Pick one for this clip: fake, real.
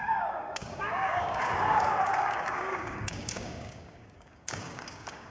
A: fake